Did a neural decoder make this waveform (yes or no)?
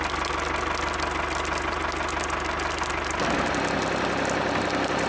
no